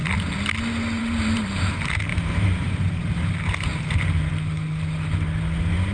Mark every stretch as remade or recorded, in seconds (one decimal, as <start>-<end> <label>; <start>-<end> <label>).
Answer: 0.0-1.0 recorded; 1.0-1.6 remade; 1.6-2.1 recorded; 2.1-2.8 remade; 2.8-5.9 recorded